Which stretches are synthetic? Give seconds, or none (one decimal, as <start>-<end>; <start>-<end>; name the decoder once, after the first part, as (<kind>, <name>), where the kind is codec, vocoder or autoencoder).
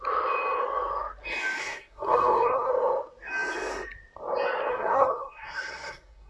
1.6-2.7 (codec, SNAC); 4.7-6.3